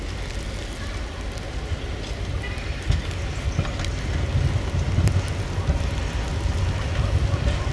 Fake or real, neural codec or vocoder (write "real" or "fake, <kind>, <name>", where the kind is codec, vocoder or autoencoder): real